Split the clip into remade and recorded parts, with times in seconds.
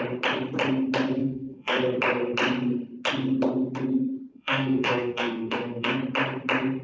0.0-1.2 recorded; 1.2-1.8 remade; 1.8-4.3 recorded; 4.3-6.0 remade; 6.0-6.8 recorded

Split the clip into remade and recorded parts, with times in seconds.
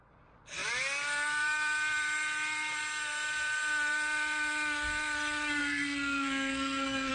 0.0-5.6 recorded; 5.6-7.1 remade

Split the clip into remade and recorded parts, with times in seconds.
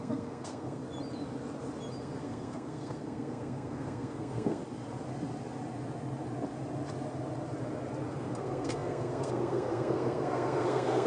0.0-0.8 remade; 0.8-2.0 recorded; 2.0-4.6 remade; 4.6-8.1 recorded; 8.1-11.1 remade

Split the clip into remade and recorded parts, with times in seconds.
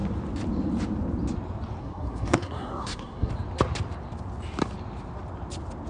0.0-1.8 recorded; 1.8-3.3 remade; 3.3-5.9 recorded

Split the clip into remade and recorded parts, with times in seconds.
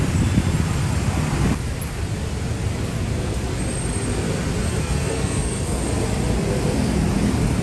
0.0-4.7 recorded; 4.7-5.8 remade; 5.8-7.6 recorded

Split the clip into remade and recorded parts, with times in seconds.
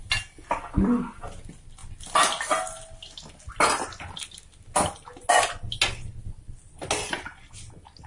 0.0-8.1 recorded